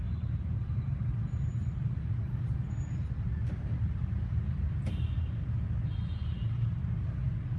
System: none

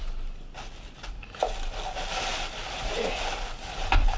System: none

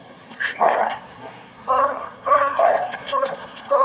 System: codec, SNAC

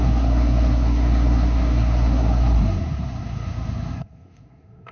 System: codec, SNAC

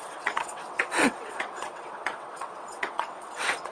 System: vocoder, WaveNeXt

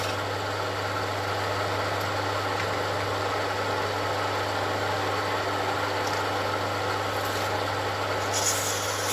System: none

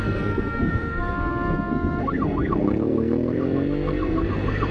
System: codec, SNAC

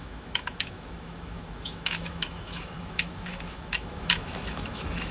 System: autoencoder, DAC-VAE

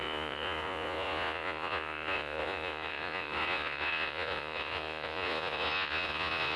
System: vocoder, Vocos